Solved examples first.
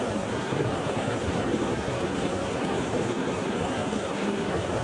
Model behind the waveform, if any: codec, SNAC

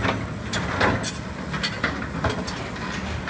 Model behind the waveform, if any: none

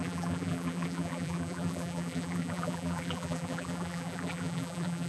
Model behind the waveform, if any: vocoder, BigVGAN v2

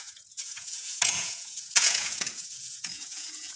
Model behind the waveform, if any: vocoder, Vocos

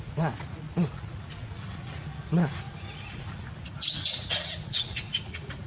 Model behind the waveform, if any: vocoder, Vocos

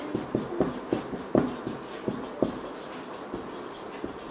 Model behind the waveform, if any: none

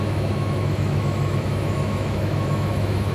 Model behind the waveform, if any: autoencoder, DAC-VAE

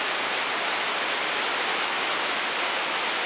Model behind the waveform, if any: none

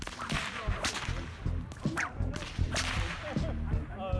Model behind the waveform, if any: none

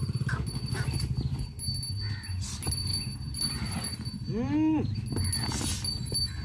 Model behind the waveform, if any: none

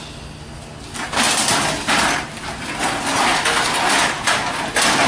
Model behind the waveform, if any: none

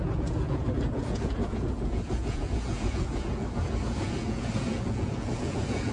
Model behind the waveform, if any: vocoder, Vocos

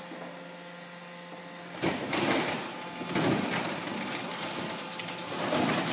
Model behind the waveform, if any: none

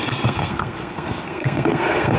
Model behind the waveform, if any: codec, SNAC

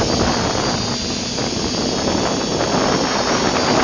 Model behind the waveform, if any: none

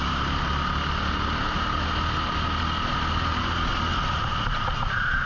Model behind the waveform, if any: none